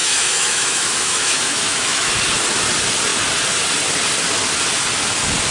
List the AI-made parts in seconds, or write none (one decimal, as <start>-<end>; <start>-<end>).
0.0-2.1